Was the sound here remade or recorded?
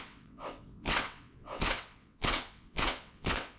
remade